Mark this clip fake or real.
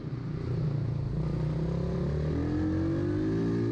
real